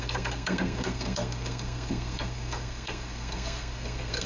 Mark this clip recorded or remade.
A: remade